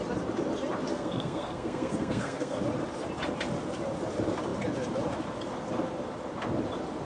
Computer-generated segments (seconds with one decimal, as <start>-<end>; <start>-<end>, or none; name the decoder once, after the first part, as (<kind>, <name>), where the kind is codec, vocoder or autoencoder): 0.9-2.6 (codec, SNAC)